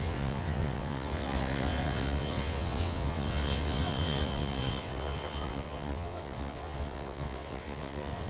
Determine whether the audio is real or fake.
fake